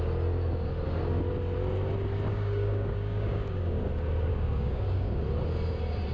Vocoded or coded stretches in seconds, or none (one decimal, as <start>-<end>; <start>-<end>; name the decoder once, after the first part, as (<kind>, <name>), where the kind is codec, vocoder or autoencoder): 2.3-3.8 (codec, DAC); 4.3-5.2